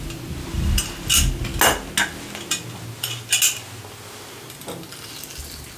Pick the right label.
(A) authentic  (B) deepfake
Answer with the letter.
A